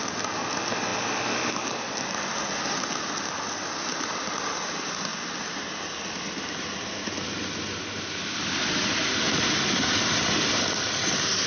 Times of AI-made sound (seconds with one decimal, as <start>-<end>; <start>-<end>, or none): none

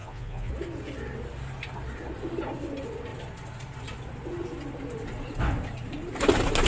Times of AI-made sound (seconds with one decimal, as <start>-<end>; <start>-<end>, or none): 0.0-0.5

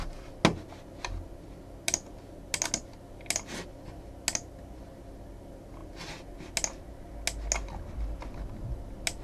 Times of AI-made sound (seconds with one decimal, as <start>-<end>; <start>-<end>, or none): none

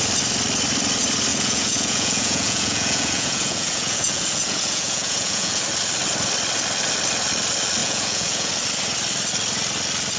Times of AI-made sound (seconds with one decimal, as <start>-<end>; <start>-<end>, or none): 1.3-5.6; 7.8-8.5

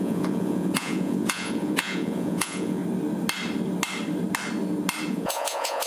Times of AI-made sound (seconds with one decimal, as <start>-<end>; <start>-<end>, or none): 0.0-2.8; 5.1-5.9

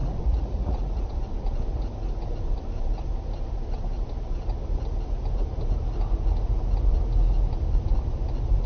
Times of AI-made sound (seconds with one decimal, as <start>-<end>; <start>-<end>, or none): 0.0-1.2

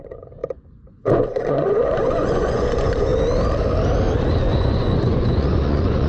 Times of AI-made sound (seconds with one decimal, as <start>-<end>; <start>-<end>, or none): 0.0-3.1; 4.4-6.1